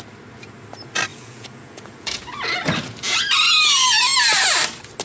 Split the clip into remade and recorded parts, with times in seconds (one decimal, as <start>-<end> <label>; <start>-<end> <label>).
0.0-1.1 recorded; 1.1-2.2 remade; 2.2-5.0 recorded